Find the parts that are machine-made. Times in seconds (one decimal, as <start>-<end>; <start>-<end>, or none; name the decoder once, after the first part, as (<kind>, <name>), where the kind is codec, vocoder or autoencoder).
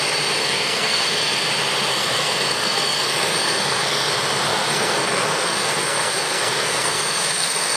0.4-1.5 (codec, SNAC); 1.9-4.1; 4.5-7.8